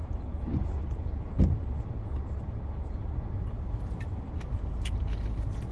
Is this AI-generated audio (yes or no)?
no